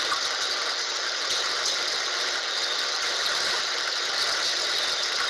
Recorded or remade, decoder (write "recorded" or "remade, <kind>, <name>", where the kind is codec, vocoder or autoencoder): recorded